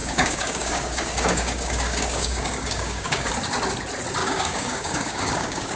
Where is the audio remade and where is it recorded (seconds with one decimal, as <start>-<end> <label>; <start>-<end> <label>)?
0.0-3.3 remade; 3.3-4.2 recorded; 4.2-5.8 remade